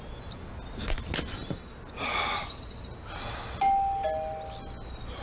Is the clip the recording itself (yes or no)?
yes